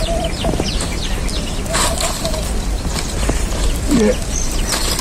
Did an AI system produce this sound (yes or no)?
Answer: yes